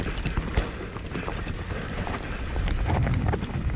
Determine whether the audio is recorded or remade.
recorded